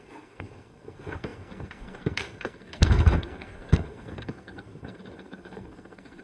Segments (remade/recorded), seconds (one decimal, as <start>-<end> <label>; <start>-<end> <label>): 0.0-6.2 remade